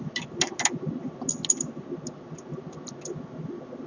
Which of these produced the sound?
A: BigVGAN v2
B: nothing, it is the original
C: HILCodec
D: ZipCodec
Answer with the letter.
B